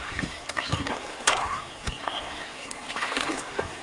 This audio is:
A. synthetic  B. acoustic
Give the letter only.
A